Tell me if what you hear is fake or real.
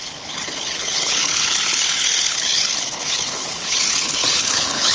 fake